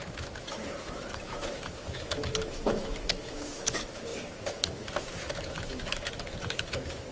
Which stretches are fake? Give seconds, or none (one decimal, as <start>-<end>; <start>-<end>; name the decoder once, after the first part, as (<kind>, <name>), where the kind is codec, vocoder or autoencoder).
0.0-7.1 (autoencoder, DAC-VAE)